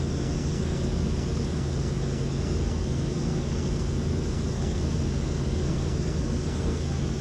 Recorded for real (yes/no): no